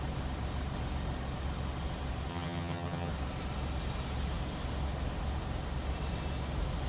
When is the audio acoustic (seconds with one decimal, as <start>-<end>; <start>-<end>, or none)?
0.0-2.3; 3.1-6.9